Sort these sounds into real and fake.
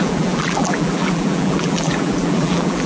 fake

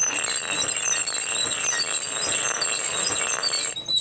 real